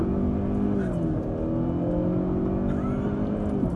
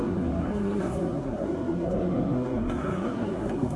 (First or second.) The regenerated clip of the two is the second